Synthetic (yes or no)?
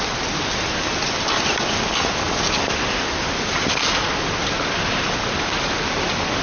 no